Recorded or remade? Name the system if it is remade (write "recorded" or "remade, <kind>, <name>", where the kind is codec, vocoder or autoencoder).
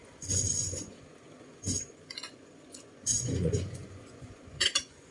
remade, vocoder, Vocos